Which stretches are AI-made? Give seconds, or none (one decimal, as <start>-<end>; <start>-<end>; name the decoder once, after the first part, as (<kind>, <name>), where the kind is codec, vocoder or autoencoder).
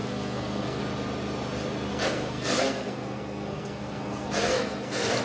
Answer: 0.0-0.8 (codec, SNAC); 1.9-5.2